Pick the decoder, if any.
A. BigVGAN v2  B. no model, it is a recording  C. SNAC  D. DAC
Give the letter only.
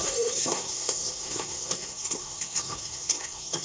C